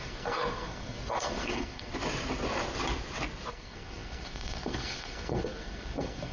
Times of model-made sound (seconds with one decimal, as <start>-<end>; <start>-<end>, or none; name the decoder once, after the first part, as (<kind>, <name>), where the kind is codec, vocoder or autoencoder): 0.0-1.9 (codec, SNAC); 3.5-6.3